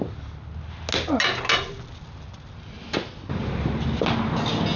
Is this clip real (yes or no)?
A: yes